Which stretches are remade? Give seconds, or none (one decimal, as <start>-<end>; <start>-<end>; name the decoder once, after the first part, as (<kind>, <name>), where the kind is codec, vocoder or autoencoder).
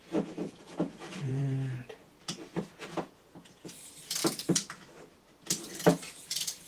0.4-1.4 (vocoder, Vocos); 2.0-3.7